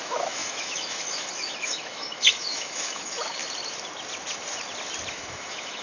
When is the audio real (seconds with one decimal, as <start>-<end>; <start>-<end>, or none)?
3.4-5.1